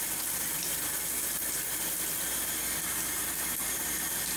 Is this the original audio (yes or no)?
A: yes